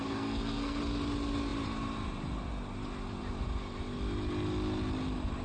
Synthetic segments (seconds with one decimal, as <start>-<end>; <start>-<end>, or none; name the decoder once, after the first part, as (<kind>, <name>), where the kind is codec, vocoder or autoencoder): 0.0-0.8 (codec, SNAC)

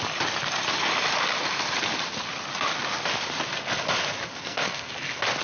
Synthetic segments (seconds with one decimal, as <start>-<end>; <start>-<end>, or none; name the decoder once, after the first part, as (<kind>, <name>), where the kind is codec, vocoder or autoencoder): 4.3-4.9 (codec, SNAC)

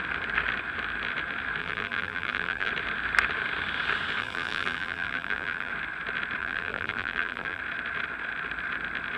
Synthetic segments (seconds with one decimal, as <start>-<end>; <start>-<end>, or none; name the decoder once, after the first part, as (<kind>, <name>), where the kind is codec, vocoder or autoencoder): 1.6-2.7 (vocoder, BigVGAN v2); 4.2-5.7; 6.4-7.6